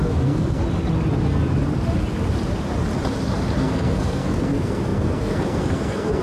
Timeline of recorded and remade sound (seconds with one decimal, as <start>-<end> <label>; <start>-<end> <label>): 0.0-0.6 remade; 0.6-3.6 recorded; 3.6-6.2 remade